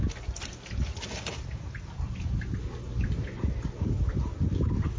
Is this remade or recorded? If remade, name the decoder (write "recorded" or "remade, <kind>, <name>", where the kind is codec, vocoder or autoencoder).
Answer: recorded